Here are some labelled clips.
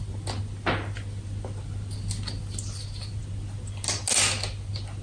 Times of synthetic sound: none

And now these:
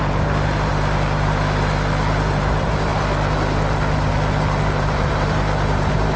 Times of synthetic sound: 0.0-0.7 (vocoder, BigVGAN v2); 2.1-2.9; 4.6-6.2

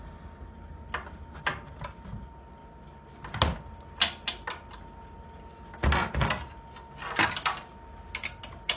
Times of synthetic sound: none